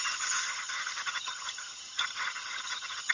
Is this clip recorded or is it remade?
remade